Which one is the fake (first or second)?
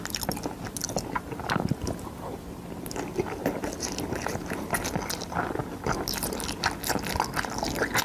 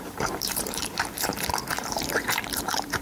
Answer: second